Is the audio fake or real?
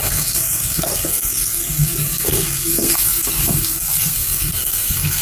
fake